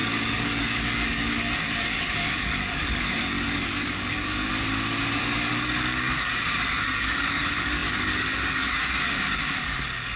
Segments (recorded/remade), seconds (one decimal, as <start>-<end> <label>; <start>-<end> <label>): 0.0-4.5 remade; 4.5-5.2 recorded; 5.2-10.2 remade